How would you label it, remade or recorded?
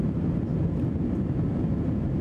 recorded